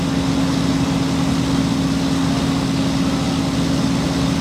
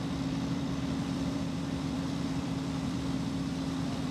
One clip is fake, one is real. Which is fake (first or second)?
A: second